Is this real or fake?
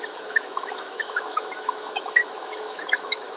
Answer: fake